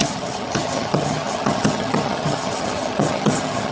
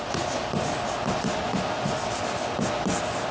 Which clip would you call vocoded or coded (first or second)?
first